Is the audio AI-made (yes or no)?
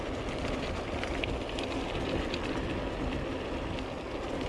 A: no